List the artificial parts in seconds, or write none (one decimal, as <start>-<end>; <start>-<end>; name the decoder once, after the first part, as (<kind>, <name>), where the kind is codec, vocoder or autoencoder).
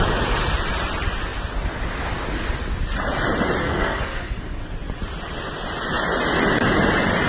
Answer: 3.6-4.6 (codec, SNAC)